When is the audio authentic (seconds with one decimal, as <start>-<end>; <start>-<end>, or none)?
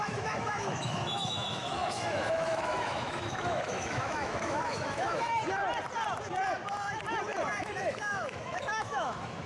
5.4-7.6